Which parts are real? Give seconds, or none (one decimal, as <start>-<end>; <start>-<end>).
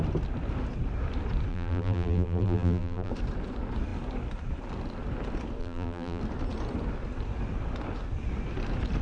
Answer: 0.0-1.5; 3.1-5.6; 6.2-9.0